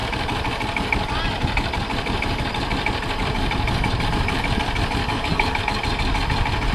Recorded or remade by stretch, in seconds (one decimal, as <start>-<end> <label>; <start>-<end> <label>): 0.0-5.0 recorded; 5.0-5.6 remade; 5.6-6.7 recorded